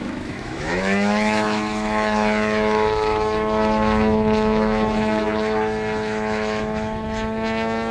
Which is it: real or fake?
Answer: fake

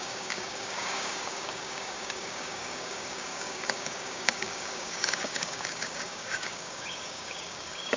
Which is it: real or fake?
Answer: fake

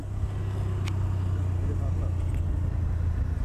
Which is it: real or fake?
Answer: real